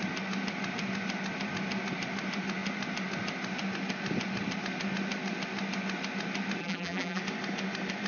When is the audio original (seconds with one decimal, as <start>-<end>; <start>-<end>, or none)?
0.0-6.6; 7.2-8.1